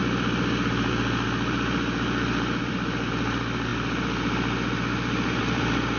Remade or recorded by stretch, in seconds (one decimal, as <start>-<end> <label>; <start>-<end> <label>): 0.0-2.6 recorded; 2.6-6.0 remade